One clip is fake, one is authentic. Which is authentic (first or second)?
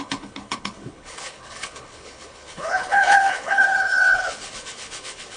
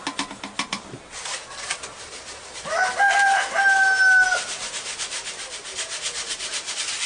second